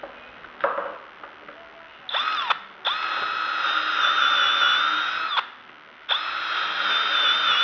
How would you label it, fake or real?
real